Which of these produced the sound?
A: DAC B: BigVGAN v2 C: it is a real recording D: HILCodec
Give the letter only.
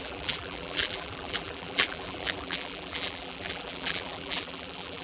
B